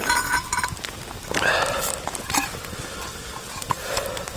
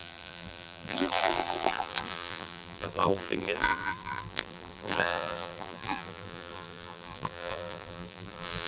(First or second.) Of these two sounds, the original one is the first